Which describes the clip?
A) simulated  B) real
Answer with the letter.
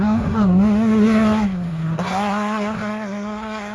A